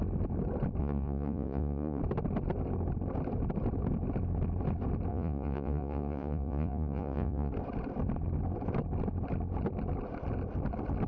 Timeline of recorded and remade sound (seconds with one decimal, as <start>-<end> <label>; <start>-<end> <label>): 0.0-0.8 recorded; 0.8-2.0 remade; 2.0-5.1 recorded; 5.1-7.5 remade; 7.5-11.1 recorded